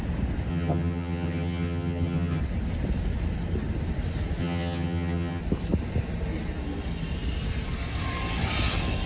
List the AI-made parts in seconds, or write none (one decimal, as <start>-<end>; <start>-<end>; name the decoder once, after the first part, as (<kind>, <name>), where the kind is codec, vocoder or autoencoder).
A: 0.5-2.4 (vocoder, HiFi-GAN); 4.4-5.4